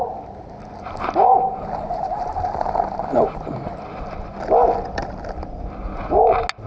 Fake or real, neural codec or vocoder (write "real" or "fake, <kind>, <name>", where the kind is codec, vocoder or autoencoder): real